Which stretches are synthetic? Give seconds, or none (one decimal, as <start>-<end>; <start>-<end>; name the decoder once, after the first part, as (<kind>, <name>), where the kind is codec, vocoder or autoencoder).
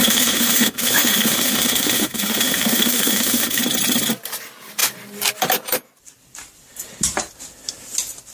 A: 0.0-3.6 (autoencoder, DAC-VAE)